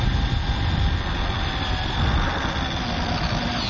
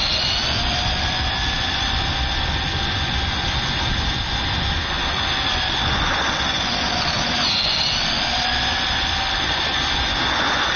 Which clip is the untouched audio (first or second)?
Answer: first